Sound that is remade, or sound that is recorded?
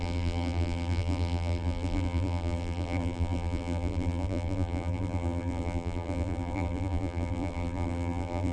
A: remade